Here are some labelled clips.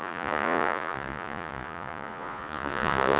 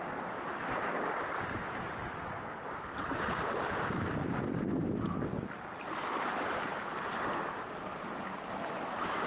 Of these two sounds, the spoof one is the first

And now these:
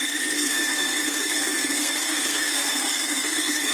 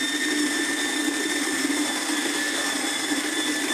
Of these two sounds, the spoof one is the first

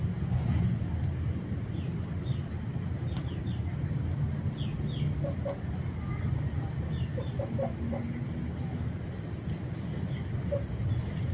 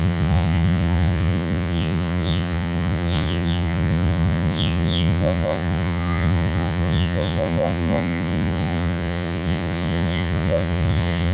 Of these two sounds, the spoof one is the second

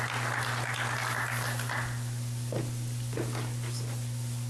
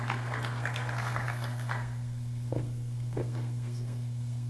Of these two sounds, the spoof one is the second